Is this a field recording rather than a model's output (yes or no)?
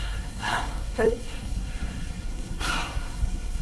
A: no